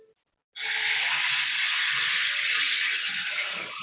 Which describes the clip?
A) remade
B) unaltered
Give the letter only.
B